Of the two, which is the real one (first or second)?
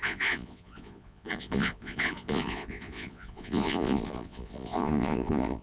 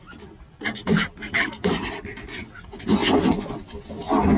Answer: second